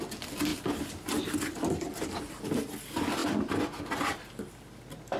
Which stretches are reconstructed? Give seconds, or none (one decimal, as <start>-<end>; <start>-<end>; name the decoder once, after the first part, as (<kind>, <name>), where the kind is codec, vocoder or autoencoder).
none